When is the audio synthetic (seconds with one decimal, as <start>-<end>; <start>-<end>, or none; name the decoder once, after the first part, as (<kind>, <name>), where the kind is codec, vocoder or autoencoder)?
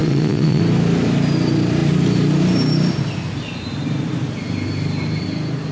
0.0-0.6 (vocoder, Vocos)